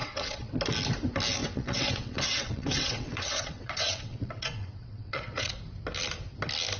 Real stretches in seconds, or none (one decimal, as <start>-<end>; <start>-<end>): 0.5-1.4; 5.5-6.8